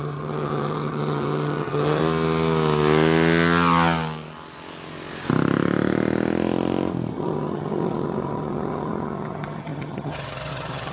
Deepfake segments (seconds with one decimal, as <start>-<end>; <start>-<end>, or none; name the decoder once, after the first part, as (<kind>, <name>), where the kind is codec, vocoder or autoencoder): 0.0-2.0 (vocoder, HiFi-GAN); 7.1-10.9